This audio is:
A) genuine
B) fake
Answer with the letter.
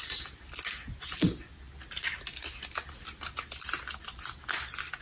A